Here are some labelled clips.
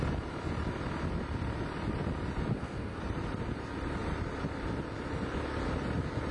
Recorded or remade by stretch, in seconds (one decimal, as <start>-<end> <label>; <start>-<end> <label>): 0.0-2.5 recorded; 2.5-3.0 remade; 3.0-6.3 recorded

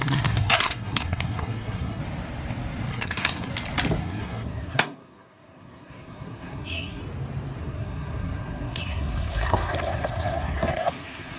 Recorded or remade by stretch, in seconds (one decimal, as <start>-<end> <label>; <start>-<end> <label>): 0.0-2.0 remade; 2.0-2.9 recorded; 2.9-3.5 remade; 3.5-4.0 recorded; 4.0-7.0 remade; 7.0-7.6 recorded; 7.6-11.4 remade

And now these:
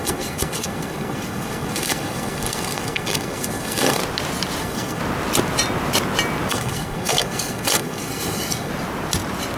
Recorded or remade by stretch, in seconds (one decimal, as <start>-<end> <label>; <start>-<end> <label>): 0.0-4.0 remade; 4.0-4.6 recorded; 4.6-5.0 remade; 5.0-6.5 recorded; 6.5-8.7 remade; 8.7-9.6 recorded

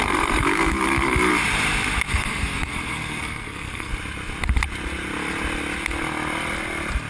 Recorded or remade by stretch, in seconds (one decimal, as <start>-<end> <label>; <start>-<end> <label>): 0.0-1.3 remade; 1.3-2.1 recorded; 2.1-3.9 remade; 3.9-7.1 recorded

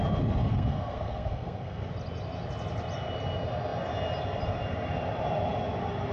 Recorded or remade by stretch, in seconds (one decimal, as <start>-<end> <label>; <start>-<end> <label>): 0.0-0.4 recorded; 0.4-1.9 remade; 1.9-6.1 recorded